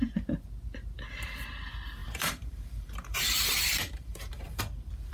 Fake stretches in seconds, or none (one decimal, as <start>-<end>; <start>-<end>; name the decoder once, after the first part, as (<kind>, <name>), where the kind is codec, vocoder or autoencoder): 2.0-4.6 (vocoder, BigVGAN v2)